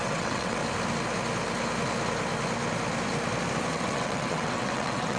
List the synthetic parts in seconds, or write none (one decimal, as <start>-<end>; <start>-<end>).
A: 0.0-0.6; 3.7-5.2